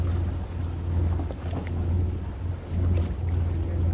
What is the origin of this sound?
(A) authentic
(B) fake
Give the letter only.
A